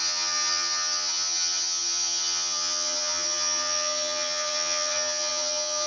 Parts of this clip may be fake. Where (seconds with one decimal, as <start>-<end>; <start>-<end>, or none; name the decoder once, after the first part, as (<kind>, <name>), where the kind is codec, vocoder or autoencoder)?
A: 0.0-5.9 (vocoder, HiFi-GAN)